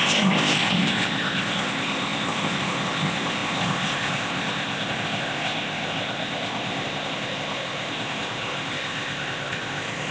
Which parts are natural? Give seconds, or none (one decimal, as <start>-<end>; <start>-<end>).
none